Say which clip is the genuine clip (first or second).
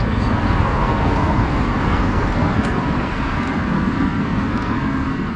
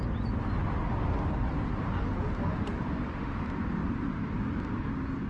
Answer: second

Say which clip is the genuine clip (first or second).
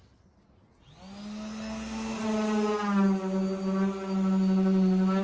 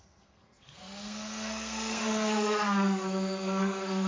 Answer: first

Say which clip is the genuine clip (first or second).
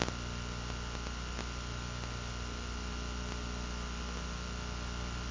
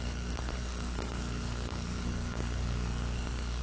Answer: first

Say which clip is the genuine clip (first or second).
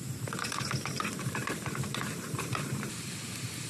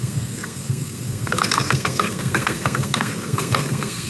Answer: first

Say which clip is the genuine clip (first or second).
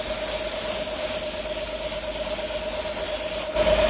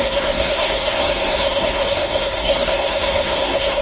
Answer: first